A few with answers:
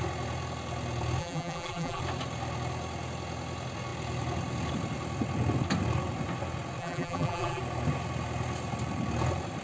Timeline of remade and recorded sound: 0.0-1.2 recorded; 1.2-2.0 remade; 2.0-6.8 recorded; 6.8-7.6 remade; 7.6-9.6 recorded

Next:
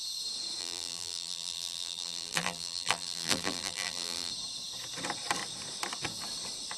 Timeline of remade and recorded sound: 0.0-0.6 recorded; 0.6-4.3 remade; 4.3-6.8 recorded

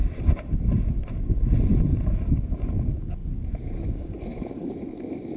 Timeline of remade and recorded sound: 0.0-3.2 recorded; 3.2-3.9 remade; 3.9-4.3 recorded; 4.3-4.9 remade; 4.9-5.4 recorded